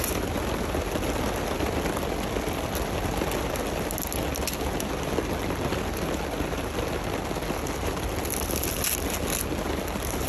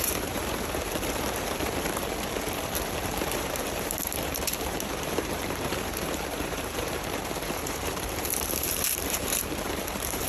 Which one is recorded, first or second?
first